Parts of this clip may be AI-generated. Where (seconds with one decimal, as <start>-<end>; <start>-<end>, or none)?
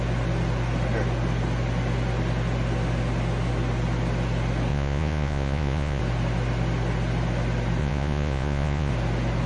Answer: 4.7-6.0; 7.8-8.9